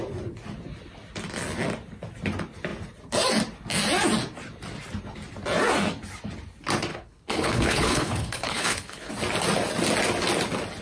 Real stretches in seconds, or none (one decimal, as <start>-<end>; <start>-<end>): 0.0-6.9; 9.1-10.8